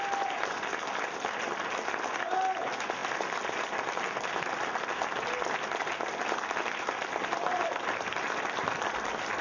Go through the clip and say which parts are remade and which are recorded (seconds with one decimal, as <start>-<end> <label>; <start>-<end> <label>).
0.0-9.4 recorded